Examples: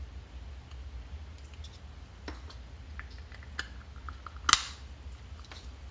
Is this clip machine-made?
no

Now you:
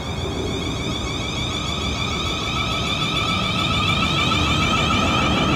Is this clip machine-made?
no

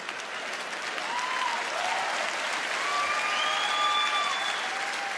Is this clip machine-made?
no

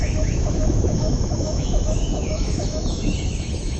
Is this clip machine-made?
yes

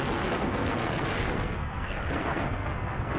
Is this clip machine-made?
yes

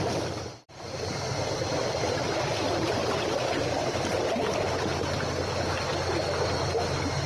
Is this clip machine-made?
no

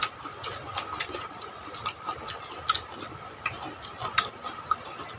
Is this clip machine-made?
no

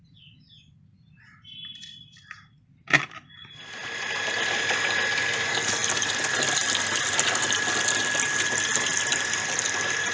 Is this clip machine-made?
no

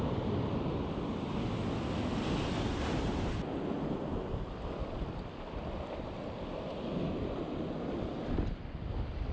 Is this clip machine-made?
no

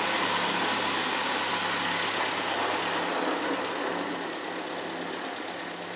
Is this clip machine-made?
no